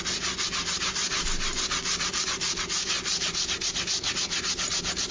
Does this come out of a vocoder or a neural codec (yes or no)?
no